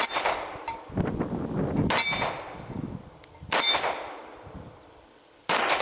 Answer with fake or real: real